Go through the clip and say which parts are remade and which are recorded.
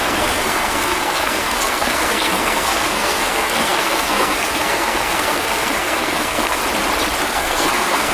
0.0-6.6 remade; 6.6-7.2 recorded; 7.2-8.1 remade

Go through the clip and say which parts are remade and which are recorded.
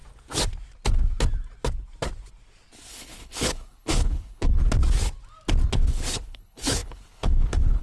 0.0-2.9 recorded; 2.9-4.6 remade; 4.6-5.7 recorded; 5.7-7.8 remade